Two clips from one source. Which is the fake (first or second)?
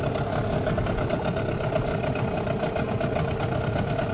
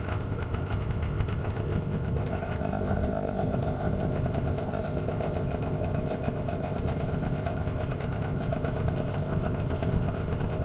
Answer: second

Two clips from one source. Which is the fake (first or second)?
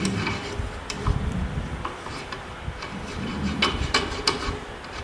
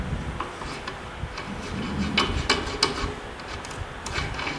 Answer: first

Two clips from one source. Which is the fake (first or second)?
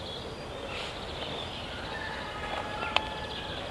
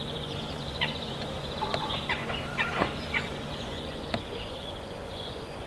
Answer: second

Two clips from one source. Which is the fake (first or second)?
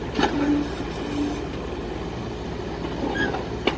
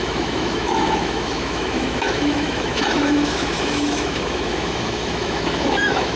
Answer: second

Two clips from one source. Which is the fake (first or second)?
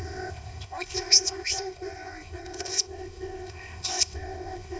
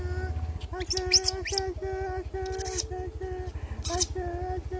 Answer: first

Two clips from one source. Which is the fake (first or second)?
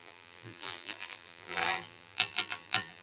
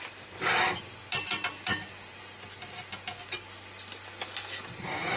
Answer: first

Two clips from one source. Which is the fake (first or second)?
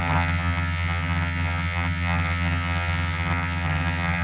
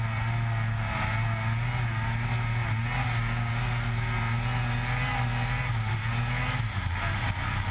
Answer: first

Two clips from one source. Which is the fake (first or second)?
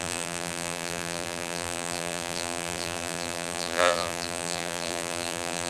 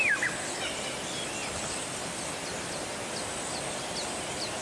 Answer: first